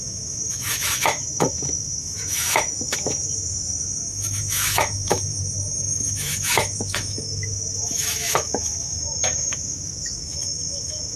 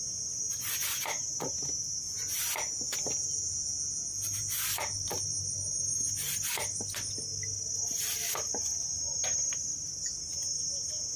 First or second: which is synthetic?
first